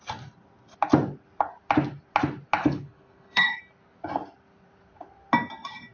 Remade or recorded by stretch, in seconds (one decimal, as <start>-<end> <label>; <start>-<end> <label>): 0.0-2.6 recorded; 2.6-3.6 remade; 3.6-5.9 recorded